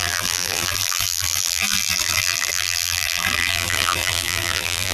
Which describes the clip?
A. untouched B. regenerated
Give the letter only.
B